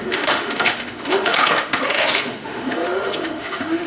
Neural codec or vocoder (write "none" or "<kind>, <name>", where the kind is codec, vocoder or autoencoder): autoencoder, DAC-VAE